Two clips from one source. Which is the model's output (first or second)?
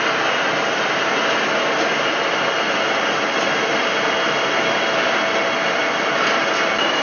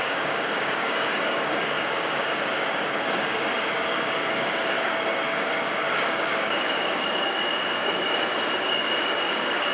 second